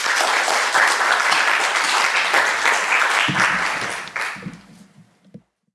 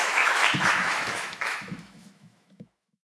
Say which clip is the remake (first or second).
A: second